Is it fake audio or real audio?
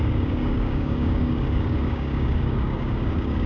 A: fake